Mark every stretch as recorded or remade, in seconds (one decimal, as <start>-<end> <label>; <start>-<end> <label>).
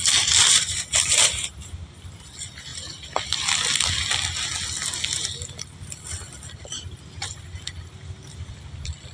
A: 0.0-9.1 recorded